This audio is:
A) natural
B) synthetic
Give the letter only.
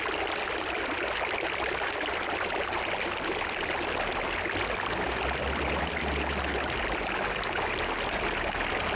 A